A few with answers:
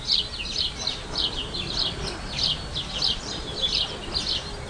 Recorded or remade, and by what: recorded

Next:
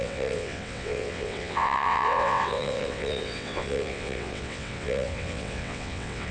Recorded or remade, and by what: remade, vocoder, WaveNeXt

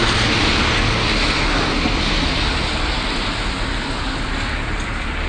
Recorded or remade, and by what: recorded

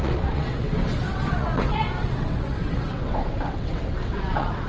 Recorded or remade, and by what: remade, vocoder, WaveNeXt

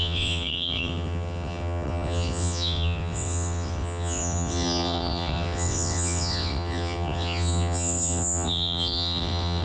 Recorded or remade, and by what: remade, vocoder, WaveNeXt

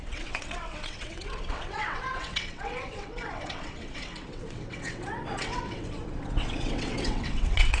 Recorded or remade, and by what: remade, vocoder, WaveNeXt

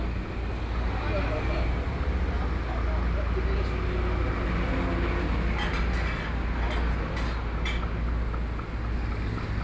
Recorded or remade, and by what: recorded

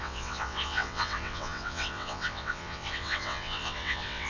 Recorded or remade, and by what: remade, vocoder, WaveNeXt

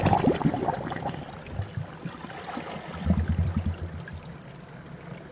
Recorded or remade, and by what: recorded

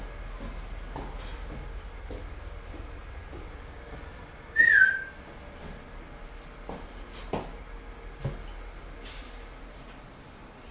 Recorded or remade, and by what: recorded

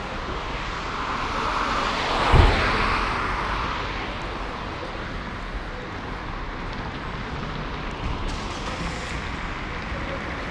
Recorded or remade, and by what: recorded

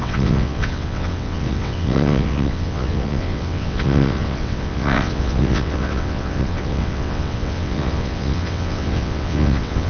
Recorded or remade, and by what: remade, vocoder, WaveNeXt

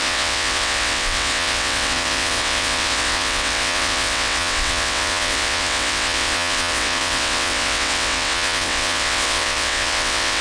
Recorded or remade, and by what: remade, vocoder, WaveNeXt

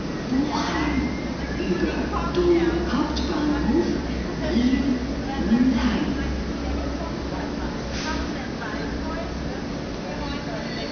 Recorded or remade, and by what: recorded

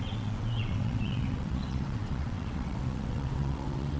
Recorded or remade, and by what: remade, vocoder, WaveNeXt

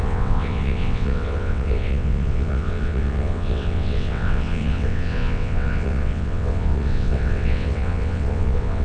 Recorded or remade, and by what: remade, vocoder, WaveNeXt